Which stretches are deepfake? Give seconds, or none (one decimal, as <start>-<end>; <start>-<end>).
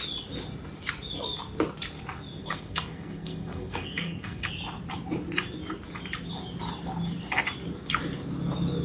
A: 2.4-4.5